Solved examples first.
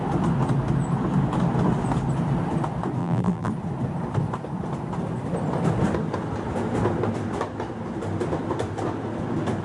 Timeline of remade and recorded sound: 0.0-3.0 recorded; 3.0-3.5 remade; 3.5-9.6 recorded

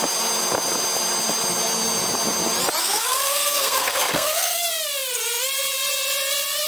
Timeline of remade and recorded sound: 0.0-2.8 recorded; 2.8-4.6 remade; 4.6-6.7 recorded